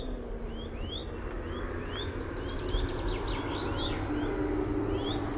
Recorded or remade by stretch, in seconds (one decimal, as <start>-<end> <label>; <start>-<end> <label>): 0.0-5.4 recorded